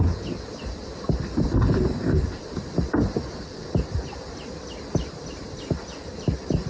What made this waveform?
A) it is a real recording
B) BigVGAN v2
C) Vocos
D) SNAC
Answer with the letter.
B